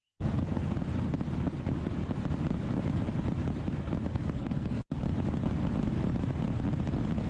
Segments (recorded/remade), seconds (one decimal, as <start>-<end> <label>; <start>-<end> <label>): 0.0-0.8 remade; 0.8-4.1 recorded; 4.1-5.0 remade; 5.0-7.3 recorded